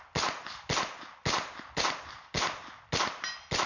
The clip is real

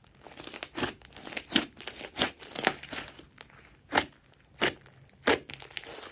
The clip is real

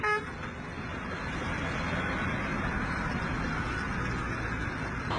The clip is real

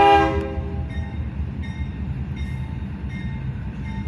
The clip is real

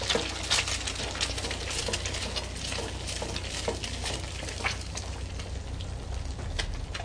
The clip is real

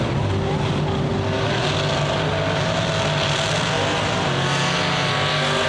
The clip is real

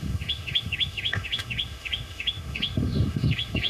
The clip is fake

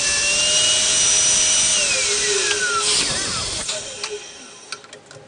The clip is real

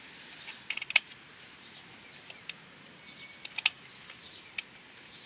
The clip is real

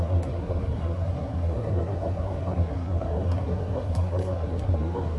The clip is fake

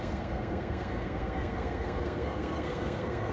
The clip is fake